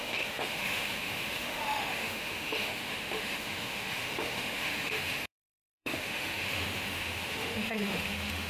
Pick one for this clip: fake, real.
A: fake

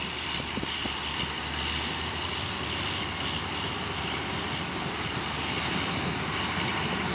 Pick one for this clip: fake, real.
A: real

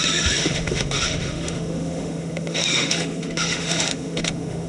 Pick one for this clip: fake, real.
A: fake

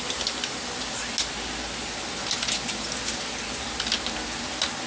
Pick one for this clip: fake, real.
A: real